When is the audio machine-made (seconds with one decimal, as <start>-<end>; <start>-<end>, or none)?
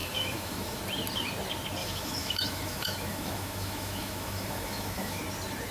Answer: 0.0-0.8; 1.8-5.2